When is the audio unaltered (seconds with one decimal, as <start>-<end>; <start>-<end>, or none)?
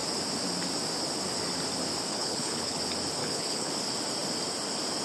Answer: 0.0-2.1; 2.8-3.2; 3.7-5.0